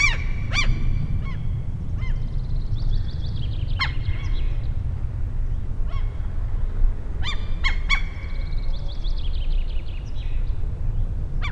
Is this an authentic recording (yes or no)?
yes